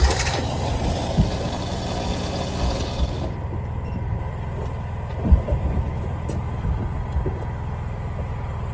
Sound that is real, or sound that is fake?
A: real